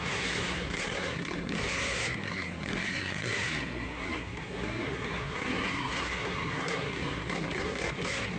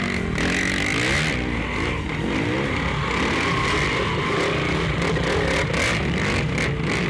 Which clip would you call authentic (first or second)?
second